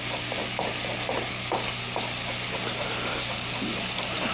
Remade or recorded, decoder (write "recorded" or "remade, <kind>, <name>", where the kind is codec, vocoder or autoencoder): recorded